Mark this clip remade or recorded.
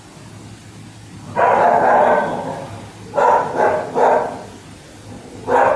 recorded